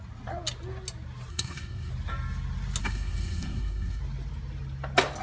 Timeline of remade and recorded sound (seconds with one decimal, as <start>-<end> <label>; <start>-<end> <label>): 0.0-1.3 recorded; 1.3-1.9 remade; 1.9-2.8 recorded; 2.8-4.0 remade; 4.0-5.2 recorded